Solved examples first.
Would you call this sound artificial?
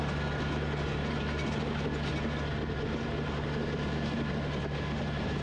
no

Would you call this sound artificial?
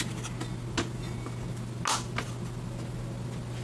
no